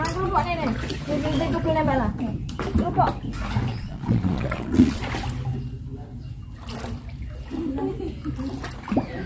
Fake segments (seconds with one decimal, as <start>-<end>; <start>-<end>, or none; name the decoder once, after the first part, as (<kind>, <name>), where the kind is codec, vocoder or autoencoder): 3.7-5.0 (vocoder, Vocos)